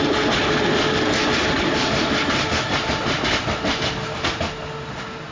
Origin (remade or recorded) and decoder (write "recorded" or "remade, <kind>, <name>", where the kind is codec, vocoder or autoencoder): recorded